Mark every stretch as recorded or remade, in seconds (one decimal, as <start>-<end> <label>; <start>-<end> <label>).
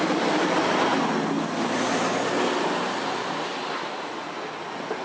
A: 0.0-5.0 recorded